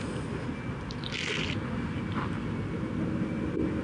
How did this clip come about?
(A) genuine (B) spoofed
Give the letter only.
A